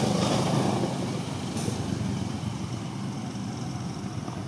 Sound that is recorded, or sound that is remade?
remade